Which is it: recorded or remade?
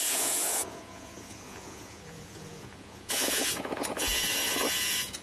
remade